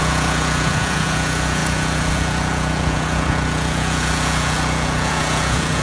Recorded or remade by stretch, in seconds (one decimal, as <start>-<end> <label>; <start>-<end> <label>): 0.0-5.8 remade